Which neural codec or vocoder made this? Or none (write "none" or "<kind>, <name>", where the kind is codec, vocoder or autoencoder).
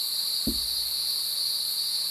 none